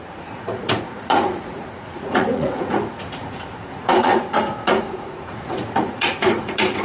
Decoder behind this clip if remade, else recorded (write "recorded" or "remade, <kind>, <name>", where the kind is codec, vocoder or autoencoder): remade, vocoder, Vocos